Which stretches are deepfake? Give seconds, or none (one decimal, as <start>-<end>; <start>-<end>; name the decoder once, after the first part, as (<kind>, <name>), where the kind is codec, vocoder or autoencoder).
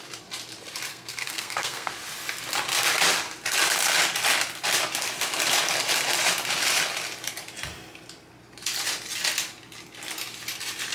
0.9-1.9 (codec, SNAC)